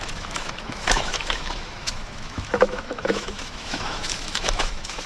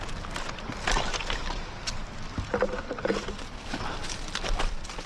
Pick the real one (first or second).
second